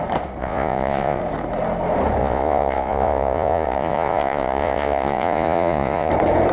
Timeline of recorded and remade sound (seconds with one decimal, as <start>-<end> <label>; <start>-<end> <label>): 0.0-0.4 recorded; 0.4-1.2 remade; 1.2-2.2 recorded; 2.2-6.1 remade; 6.1-6.5 recorded